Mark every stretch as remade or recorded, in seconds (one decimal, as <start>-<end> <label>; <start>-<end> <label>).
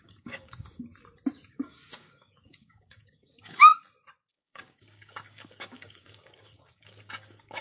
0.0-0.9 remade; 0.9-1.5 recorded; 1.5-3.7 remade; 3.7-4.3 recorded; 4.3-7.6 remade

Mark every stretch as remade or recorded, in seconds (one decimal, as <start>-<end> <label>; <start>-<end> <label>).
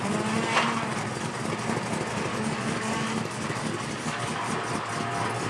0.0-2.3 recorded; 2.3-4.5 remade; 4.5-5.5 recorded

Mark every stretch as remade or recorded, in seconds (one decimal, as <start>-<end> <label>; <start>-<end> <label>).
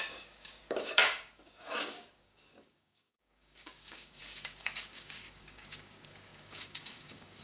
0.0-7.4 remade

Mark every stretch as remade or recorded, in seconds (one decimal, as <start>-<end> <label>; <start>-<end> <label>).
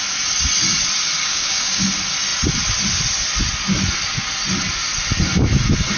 0.0-1.2 recorded; 1.2-1.8 remade; 1.8-6.0 recorded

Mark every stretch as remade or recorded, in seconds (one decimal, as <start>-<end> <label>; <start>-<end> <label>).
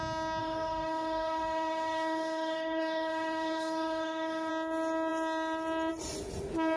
0.0-0.4 recorded; 0.4-4.5 remade; 4.5-6.8 recorded